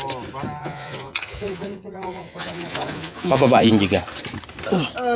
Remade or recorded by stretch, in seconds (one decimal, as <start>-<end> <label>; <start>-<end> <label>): 0.0-0.6 recorded; 0.6-3.7 remade; 3.7-5.2 recorded